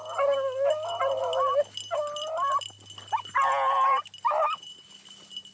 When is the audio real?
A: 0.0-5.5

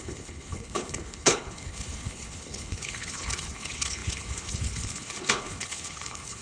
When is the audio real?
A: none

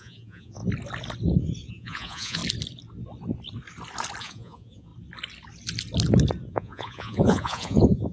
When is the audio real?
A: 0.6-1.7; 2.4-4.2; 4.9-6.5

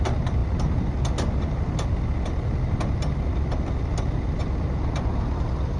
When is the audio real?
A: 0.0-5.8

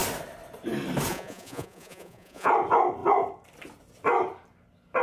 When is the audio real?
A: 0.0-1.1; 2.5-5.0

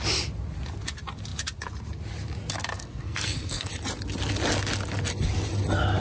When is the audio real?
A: 0.0-2.7; 3.7-6.0